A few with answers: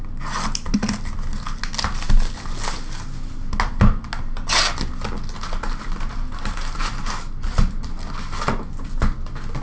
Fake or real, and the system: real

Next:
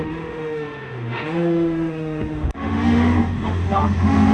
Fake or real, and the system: fake, autoencoder, DAC-VAE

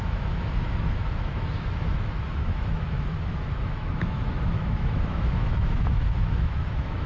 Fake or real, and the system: fake, autoencoder, DAC-VAE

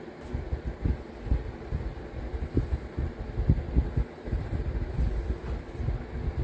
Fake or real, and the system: real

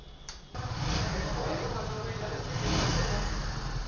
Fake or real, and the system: real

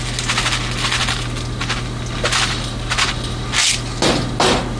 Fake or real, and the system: real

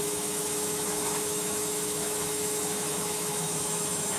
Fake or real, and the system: fake, autoencoder, DAC-VAE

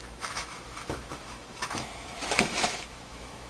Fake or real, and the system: fake, autoencoder, DAC-VAE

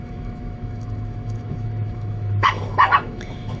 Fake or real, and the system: fake, autoencoder, DAC-VAE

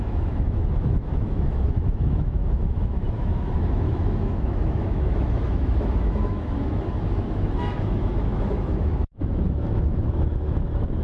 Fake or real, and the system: fake, autoencoder, DAC-VAE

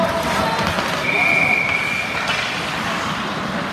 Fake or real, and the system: real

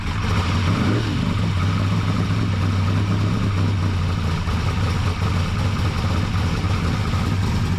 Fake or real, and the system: real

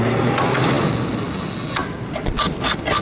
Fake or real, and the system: real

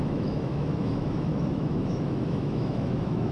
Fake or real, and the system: fake, autoencoder, DAC-VAE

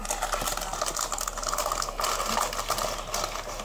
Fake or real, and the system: real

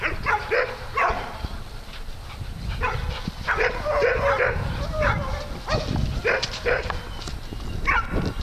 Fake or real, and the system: real